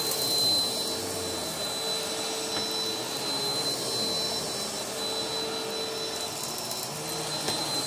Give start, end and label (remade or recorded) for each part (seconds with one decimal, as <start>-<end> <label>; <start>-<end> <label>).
0.0-7.9 recorded